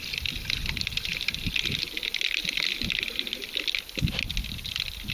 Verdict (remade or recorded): recorded